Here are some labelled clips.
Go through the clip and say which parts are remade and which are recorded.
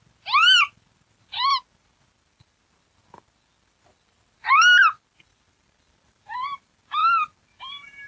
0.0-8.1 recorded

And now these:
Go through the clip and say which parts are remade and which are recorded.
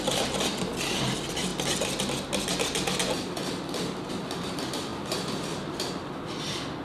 0.0-1.5 remade; 1.5-4.1 recorded; 4.1-4.9 remade; 4.9-6.0 recorded; 6.0-6.8 remade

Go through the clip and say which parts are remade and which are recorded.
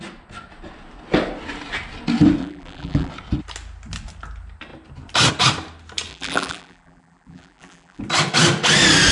0.0-2.4 recorded; 2.4-3.1 remade; 3.1-6.1 recorded; 6.1-8.0 remade; 8.0-9.1 recorded